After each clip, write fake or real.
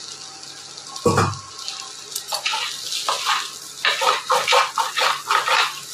real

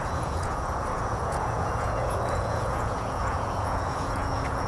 fake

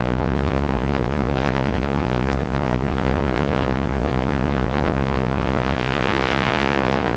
fake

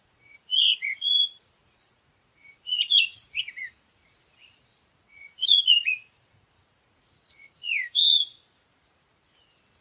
fake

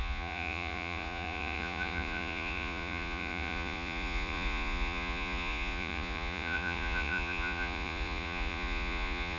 fake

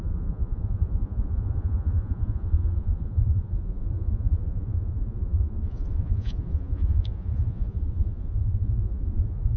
fake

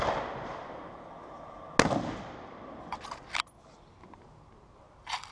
real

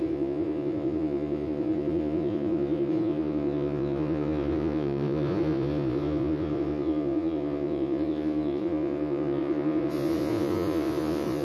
fake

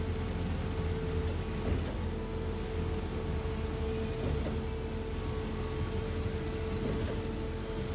real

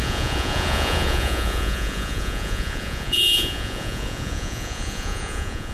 fake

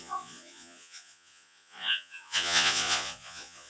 fake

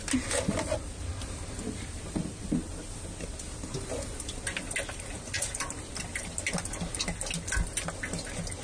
real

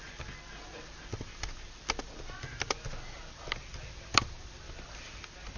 real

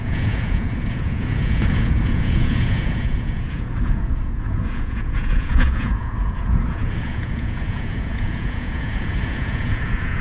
fake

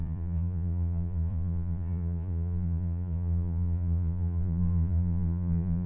fake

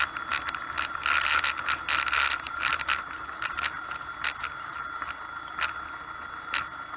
real